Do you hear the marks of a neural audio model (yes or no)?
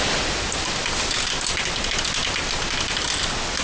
no